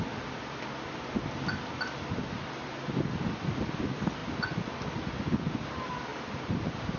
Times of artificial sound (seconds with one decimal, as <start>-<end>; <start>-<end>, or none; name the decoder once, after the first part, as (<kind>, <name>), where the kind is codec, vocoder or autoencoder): 6.1-7.0 (vocoder, BigVGAN v2)